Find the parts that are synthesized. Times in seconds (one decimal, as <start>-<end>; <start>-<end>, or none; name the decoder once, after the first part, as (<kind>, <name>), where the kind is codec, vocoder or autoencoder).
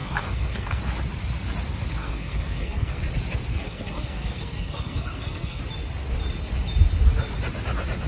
0.0-0.8 (codec, SNAC); 2.0-3.0; 3.5-5.6